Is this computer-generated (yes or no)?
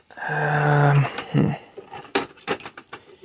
no